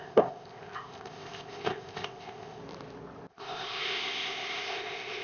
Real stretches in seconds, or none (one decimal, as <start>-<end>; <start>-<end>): 2.6-3.3